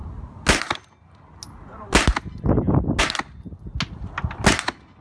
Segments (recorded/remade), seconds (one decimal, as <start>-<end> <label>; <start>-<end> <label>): 0.0-5.0 recorded